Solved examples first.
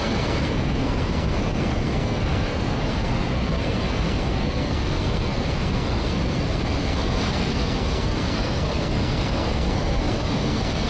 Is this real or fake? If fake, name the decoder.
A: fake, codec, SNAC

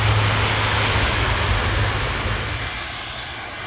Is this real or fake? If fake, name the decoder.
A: real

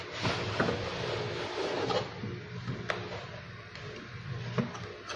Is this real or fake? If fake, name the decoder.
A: real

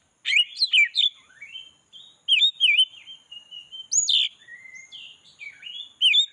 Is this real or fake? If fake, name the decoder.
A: real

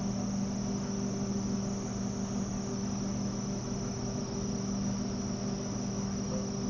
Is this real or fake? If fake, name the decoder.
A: real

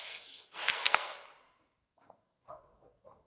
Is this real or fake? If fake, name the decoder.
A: fake, codec, SNAC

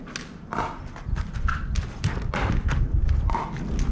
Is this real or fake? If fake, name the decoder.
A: real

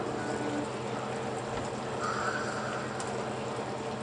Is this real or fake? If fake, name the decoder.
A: real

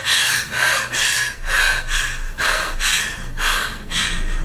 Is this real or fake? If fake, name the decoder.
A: fake, codec, SNAC